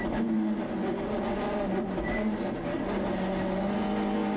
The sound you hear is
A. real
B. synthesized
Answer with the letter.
A